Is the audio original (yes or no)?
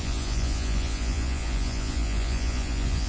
no